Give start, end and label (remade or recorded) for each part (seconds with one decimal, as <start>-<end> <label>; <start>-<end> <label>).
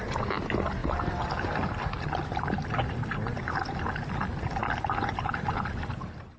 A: 0.0-6.4 recorded